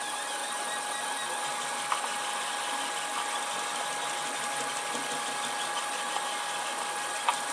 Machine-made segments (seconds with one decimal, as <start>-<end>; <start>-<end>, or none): none